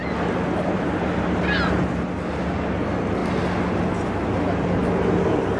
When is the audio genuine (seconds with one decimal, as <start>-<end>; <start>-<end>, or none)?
0.0-5.6